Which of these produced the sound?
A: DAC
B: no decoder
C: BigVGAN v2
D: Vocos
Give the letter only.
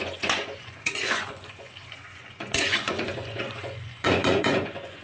D